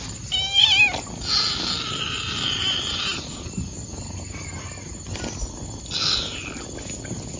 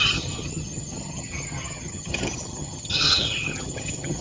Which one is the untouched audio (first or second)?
first